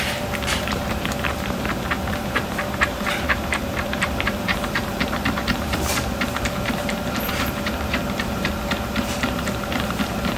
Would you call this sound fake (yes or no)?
yes